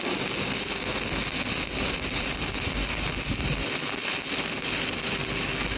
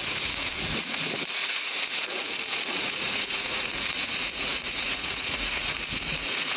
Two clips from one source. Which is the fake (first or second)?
second